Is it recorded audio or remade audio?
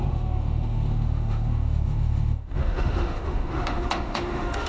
remade